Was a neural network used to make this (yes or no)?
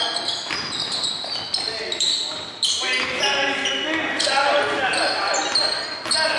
no